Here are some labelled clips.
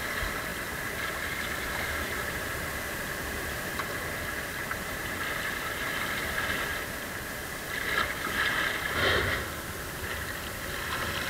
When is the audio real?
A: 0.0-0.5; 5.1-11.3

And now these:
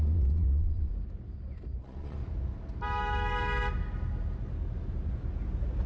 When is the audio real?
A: 0.9-1.8; 2.2-5.9

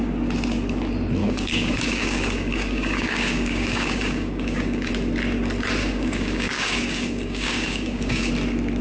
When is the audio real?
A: 0.0-1.2; 4.9-5.8; 8.3-8.8

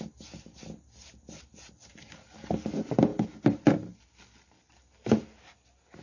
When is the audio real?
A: 0.0-6.0

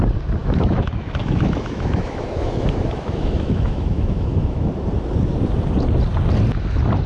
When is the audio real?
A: 0.0-0.4; 4.7-7.1

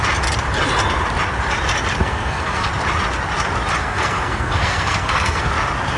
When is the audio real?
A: 0.0-2.0; 2.7-3.8; 5.5-6.0